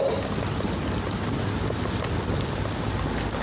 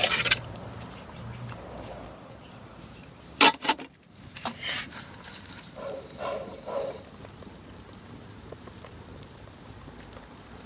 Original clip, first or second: first